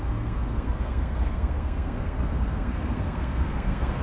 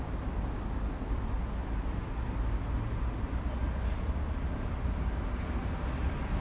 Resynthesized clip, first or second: first